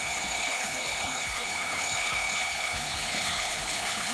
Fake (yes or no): yes